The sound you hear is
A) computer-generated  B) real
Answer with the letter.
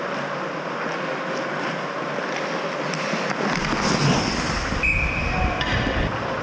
B